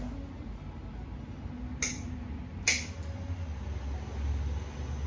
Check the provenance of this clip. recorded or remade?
recorded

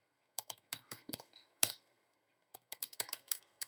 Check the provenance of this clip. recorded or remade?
remade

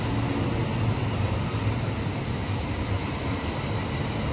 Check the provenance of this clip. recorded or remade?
recorded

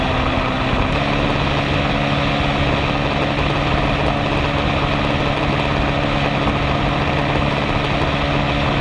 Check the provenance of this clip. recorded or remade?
recorded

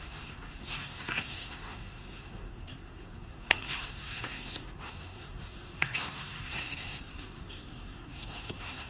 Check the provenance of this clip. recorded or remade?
remade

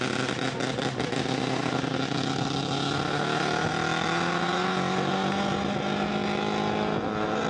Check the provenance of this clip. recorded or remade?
recorded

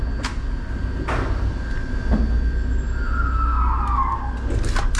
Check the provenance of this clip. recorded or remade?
recorded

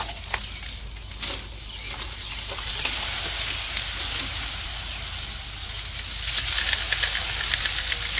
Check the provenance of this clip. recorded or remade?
recorded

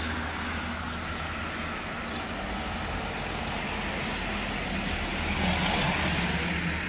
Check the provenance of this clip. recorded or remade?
recorded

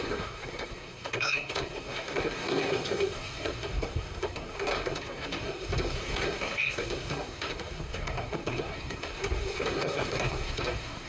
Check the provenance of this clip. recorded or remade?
remade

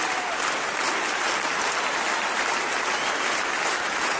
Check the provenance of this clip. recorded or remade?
recorded